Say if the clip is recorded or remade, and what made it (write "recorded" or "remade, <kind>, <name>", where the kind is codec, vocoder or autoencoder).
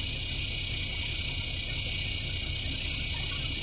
recorded